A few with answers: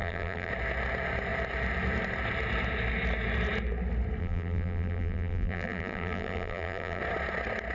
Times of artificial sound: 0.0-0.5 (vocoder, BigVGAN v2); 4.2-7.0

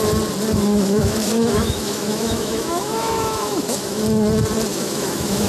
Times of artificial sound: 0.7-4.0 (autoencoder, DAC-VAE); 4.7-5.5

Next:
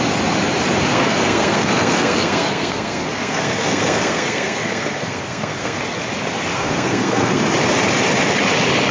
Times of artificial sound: 0.9-5.8 (codec, SNAC); 6.5-7.4

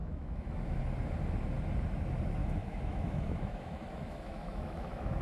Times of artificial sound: 0.0-0.8 (autoencoder, DAC-VAE); 2.4-5.2